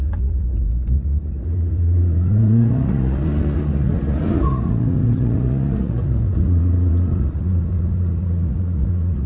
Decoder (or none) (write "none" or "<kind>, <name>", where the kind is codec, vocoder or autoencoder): vocoder, Vocos